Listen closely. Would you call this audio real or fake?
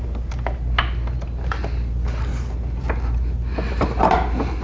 real